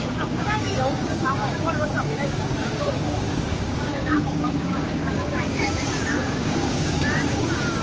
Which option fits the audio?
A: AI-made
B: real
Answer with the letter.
A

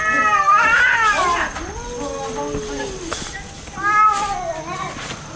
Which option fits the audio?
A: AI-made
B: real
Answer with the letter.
B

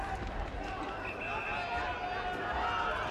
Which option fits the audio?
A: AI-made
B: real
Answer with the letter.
B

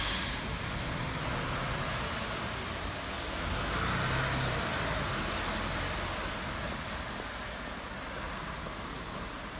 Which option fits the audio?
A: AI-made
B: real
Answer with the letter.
B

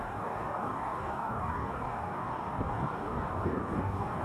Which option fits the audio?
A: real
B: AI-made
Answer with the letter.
B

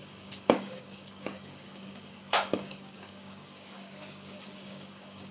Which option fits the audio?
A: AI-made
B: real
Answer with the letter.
A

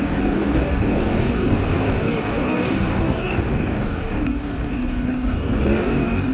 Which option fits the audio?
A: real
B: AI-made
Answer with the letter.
B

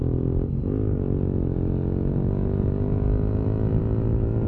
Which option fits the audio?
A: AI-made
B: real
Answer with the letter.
B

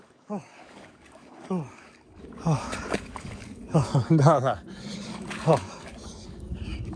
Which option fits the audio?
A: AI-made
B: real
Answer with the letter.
A